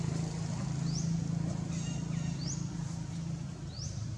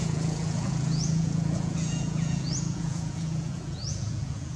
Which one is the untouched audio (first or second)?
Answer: first